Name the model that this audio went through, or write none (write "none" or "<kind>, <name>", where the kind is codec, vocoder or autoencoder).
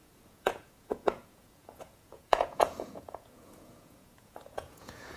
vocoder, Vocos